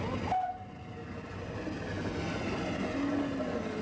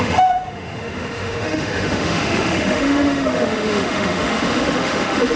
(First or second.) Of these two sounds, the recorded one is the first